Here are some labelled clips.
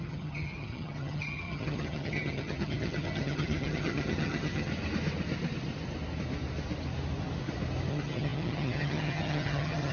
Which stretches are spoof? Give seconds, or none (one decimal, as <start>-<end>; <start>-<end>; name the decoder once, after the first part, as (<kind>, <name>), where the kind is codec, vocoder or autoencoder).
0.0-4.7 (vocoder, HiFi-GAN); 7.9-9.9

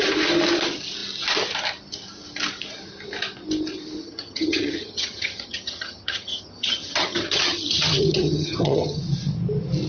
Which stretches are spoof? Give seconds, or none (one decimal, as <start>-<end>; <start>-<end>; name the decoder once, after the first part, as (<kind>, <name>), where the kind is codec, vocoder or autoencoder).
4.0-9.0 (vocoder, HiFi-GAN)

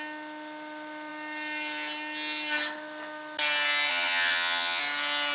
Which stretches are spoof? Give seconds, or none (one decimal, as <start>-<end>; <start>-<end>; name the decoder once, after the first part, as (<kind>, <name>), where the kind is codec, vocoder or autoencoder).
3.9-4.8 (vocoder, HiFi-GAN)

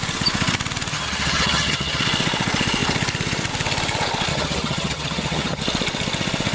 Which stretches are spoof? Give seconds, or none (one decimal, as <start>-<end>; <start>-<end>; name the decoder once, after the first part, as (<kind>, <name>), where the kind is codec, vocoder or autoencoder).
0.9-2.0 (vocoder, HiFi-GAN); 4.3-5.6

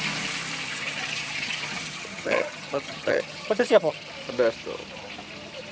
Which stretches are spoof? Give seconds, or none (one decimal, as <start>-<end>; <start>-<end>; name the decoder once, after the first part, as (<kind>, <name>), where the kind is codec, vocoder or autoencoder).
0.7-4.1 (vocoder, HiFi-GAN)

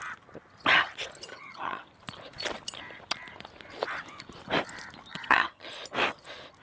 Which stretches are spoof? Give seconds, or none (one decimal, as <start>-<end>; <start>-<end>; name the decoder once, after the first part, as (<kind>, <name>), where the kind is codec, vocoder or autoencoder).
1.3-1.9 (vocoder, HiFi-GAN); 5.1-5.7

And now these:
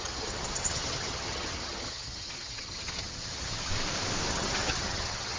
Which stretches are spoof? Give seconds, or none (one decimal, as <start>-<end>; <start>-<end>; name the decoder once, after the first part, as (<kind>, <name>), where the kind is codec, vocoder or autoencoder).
0.0-3.7 (vocoder, HiFi-GAN); 4.3-5.4